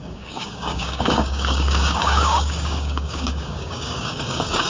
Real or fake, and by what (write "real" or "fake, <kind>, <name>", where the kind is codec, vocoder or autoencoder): fake, codec, DAC